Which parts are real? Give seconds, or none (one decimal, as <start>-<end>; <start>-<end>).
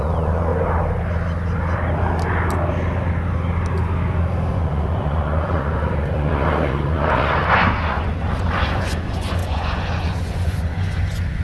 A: 0.5-4.5